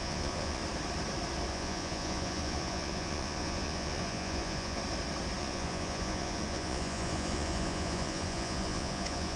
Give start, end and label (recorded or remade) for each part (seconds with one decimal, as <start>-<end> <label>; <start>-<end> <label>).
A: 0.0-0.6 remade; 0.6-1.5 recorded; 1.5-4.8 remade; 4.8-5.4 recorded; 5.4-9.4 remade